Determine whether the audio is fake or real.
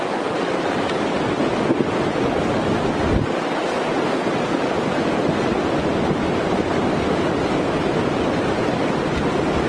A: real